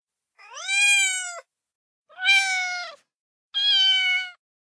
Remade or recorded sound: recorded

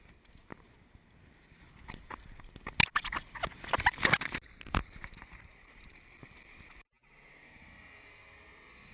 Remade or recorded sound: recorded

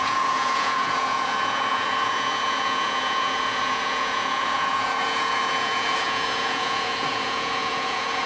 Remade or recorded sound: remade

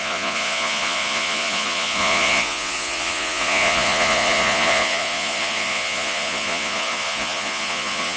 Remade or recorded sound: remade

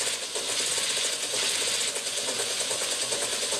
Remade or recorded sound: remade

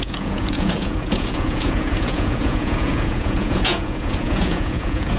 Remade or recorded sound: remade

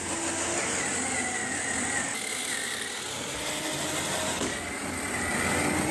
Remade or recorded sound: recorded